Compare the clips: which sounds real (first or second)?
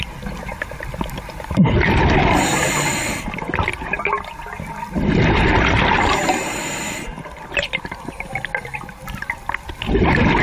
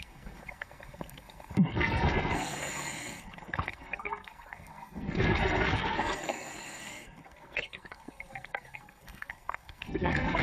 first